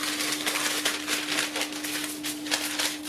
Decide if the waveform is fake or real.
real